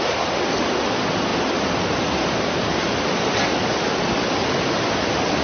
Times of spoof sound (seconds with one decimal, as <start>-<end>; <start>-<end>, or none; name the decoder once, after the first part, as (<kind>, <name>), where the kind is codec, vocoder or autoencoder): none